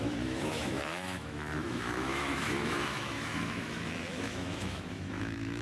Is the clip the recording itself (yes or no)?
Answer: no